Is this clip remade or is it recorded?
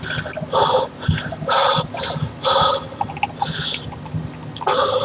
recorded